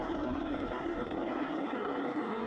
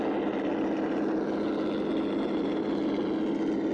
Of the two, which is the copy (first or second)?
first